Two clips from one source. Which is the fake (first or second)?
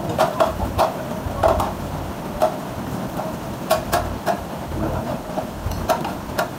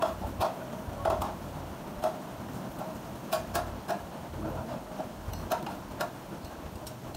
first